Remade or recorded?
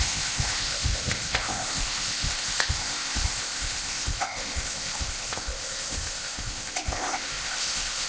remade